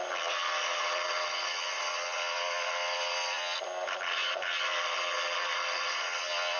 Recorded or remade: recorded